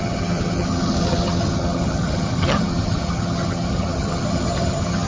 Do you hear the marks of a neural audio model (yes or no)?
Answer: yes